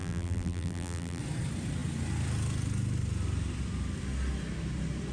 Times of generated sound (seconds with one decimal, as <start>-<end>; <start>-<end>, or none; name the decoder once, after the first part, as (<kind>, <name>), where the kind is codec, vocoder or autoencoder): 0.0-1.2 (vocoder, BigVGAN v2)